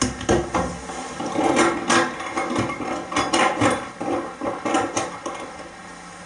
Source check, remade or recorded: recorded